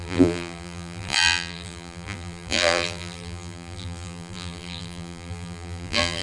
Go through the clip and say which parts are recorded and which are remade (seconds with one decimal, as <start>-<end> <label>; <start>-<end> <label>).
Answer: 0.0-6.2 remade